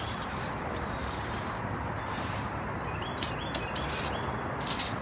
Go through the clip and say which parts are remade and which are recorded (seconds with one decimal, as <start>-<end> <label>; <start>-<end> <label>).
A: 0.0-1.0 recorded; 1.0-4.0 remade; 4.0-5.0 recorded